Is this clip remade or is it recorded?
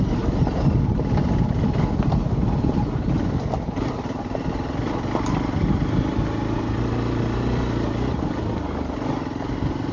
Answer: recorded